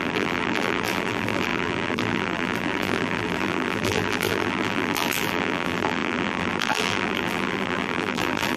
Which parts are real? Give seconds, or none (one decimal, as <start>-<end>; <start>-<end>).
none